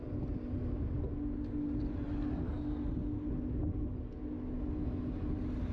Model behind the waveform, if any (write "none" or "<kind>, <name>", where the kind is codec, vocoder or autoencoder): none